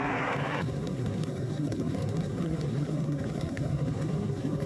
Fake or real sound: fake